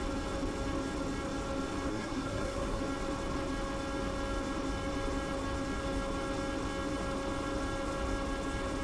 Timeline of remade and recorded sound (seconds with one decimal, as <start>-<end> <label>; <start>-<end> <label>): 0.0-1.9 recorded; 1.9-2.8 remade; 2.8-8.8 recorded